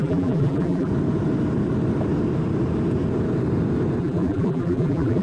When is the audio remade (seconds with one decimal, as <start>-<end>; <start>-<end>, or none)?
0.0-0.9; 4.0-5.2